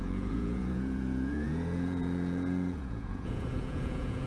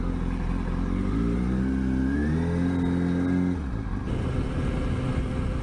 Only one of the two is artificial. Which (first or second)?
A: first